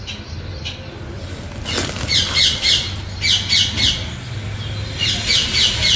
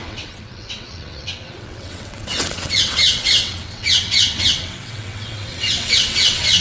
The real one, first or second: first